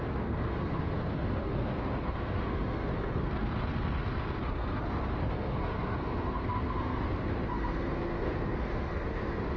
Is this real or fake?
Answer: fake